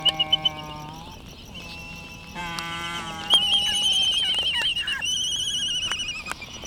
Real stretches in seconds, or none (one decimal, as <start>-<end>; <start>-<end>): 0.0-2.4; 4.2-4.7; 5.5-6.7